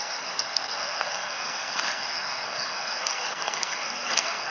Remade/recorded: remade